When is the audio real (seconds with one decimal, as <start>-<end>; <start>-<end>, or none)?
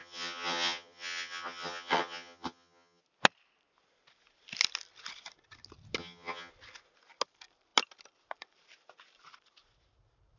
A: 3.0-6.0; 6.5-10.4